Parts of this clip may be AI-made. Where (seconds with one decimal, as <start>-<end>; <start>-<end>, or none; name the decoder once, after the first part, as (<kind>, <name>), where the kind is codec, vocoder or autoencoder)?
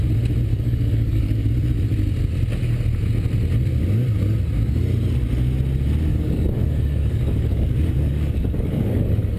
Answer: 0.5-1.5 (codec, DAC); 6.1-9.4